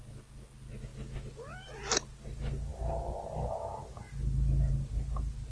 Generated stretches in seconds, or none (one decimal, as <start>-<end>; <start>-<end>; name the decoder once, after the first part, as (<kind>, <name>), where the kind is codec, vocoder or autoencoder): none